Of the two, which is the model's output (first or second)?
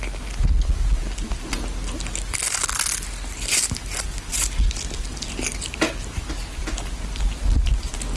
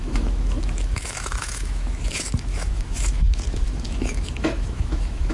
second